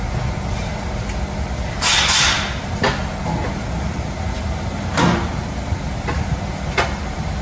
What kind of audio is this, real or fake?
real